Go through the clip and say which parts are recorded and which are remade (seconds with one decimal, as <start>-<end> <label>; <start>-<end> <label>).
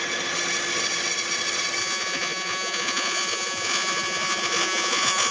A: 0.0-1.8 recorded; 1.8-5.3 remade